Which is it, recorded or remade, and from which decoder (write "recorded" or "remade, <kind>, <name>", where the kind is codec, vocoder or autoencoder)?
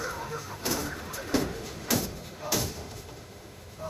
remade, autoencoder, DAC-VAE